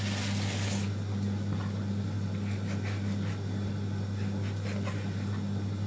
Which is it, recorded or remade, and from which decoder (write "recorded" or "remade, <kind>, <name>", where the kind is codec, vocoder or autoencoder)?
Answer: recorded